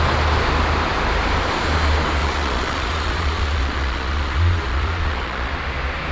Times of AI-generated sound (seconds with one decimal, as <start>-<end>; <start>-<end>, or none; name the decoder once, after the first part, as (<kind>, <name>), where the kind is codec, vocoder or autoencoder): 2.2-5.5 (vocoder, Vocos)